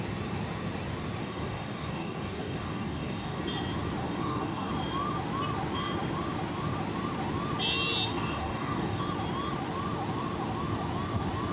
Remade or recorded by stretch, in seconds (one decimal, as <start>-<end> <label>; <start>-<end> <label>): 0.0-1.2 recorded; 1.2-3.4 remade; 3.4-4.0 recorded; 4.0-4.7 remade; 4.7-8.1 recorded; 8.1-9.0 remade; 9.0-11.5 recorded